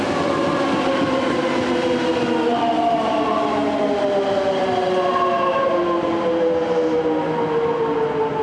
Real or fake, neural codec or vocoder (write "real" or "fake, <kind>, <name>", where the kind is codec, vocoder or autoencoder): real